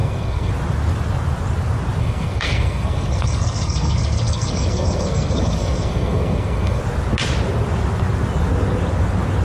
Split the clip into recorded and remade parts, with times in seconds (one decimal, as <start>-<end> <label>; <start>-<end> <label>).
0.0-0.5 remade; 0.5-2.0 recorded; 2.0-6.8 remade; 6.8-9.4 recorded